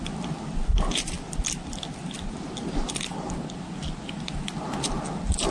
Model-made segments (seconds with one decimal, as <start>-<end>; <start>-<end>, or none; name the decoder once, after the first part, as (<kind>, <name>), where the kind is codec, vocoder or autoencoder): none